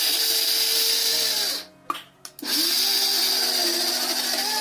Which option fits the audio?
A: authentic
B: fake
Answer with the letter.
A